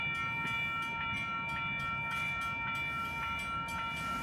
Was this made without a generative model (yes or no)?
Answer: yes